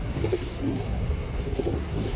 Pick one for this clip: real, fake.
fake